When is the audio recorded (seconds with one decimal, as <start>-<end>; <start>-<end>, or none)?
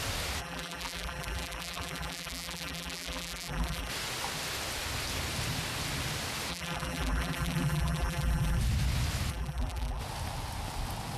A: 0.0-0.4; 3.9-6.5; 8.6-9.3; 10.0-11.2